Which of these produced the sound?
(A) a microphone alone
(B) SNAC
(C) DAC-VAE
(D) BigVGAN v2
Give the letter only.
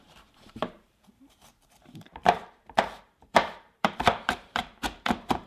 D